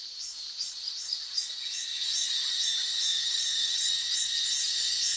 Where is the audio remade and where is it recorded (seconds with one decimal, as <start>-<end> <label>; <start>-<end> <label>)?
0.0-3.1 recorded; 3.1-3.8 remade; 3.8-5.2 recorded